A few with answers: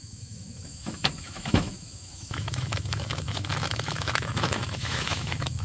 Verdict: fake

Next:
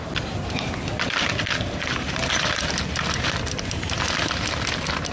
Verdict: real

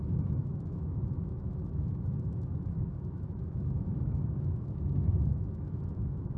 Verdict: fake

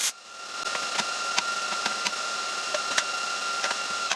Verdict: real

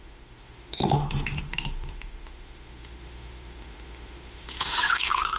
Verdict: fake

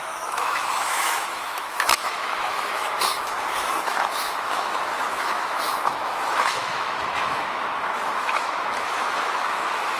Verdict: fake